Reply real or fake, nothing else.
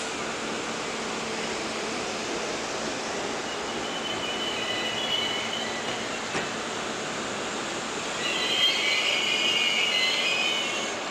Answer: real